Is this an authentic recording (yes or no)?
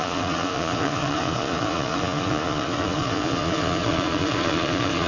no